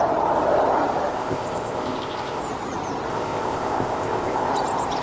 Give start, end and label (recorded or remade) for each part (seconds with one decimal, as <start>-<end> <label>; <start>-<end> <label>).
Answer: 0.0-1.1 recorded; 1.1-2.4 remade; 2.4-3.1 recorded; 3.1-4.5 remade; 4.5-5.0 recorded